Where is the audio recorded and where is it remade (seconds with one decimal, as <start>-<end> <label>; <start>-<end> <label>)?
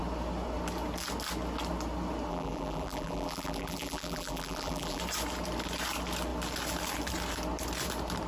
0.0-2.3 recorded; 2.3-5.0 remade; 5.0-8.3 recorded